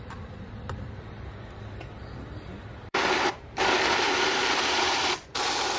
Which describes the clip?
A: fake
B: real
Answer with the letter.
A